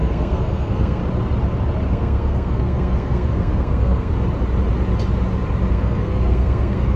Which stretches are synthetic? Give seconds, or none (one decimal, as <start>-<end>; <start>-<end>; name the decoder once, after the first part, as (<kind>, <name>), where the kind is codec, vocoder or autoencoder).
0.0-1.0 (codec, SNAC); 1.9-4.1; 5.7-7.0